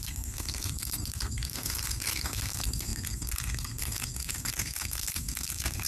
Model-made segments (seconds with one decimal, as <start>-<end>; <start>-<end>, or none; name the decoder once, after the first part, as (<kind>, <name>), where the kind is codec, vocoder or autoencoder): 0.0-5.9 (codec, SNAC)